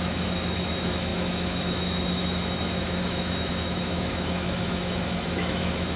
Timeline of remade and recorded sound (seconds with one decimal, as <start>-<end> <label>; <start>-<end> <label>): 0.0-6.0 remade